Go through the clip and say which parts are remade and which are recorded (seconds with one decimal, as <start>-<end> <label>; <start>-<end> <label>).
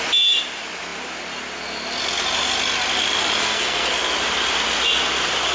0.0-3.4 recorded; 3.4-3.9 remade; 3.9-5.5 recorded